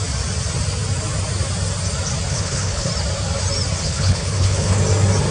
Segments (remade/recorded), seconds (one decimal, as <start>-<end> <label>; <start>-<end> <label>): 0.0-2.3 recorded; 2.3-2.9 remade; 2.9-3.8 recorded; 3.8-4.8 remade; 4.8-5.3 recorded